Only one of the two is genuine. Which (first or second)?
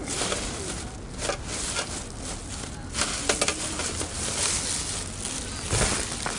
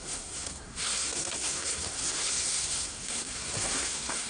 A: first